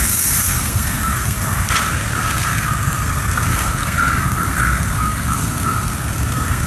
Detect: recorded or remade remade